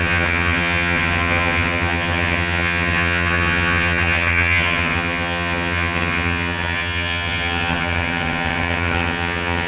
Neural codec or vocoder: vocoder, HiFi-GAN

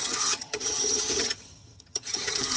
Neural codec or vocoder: vocoder, HiFi-GAN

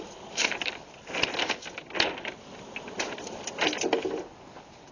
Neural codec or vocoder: none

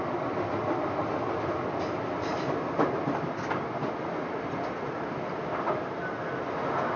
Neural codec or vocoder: none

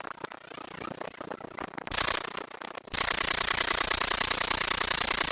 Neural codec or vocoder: none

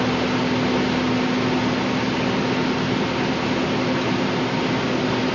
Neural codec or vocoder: none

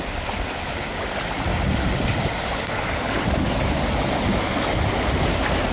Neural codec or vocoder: none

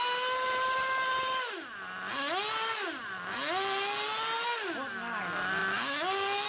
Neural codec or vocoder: none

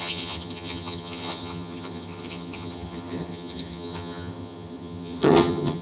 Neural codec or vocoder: vocoder, HiFi-GAN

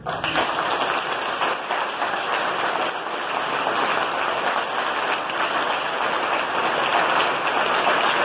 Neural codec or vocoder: none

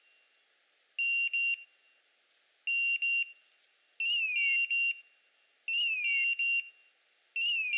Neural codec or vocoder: none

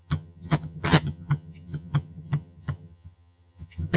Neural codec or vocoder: vocoder, HiFi-GAN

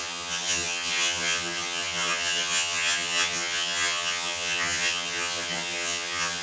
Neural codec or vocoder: vocoder, HiFi-GAN